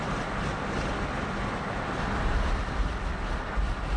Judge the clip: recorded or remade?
recorded